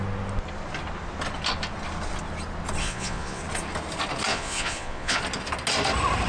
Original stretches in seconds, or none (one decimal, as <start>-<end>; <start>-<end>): 0.0-2.8; 3.4-4.3; 5.2-6.3